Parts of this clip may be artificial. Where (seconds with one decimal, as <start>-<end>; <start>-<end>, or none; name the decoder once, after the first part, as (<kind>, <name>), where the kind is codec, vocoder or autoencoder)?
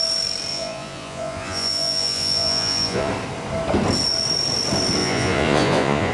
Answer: 0.5-3.1 (vocoder, Vocos); 5.0-6.1